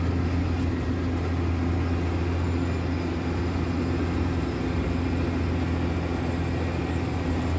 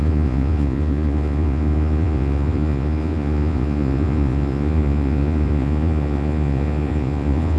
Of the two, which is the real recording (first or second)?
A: first